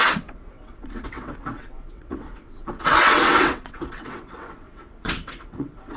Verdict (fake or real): fake